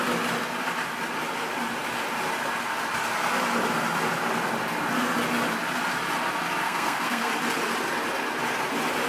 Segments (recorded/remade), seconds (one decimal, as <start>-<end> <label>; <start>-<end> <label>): 0.0-6.6 recorded; 6.6-7.3 remade; 7.3-9.1 recorded